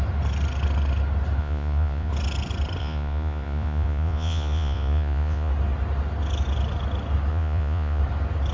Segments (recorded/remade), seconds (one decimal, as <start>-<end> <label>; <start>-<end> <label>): 0.0-1.4 recorded; 1.4-2.1 remade; 2.1-2.8 recorded; 2.8-5.5 remade; 5.5-7.3 recorded; 7.3-8.0 remade; 8.0-8.5 recorded